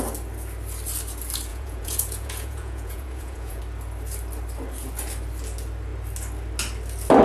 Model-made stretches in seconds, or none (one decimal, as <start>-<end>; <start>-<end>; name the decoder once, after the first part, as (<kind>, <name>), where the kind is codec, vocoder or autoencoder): 1.5-3.6 (vocoder, Vocos)